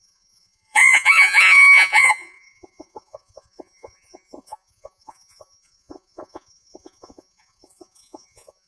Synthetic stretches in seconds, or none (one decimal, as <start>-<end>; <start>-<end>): 0.0-8.7